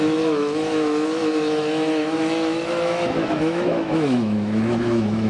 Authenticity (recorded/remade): remade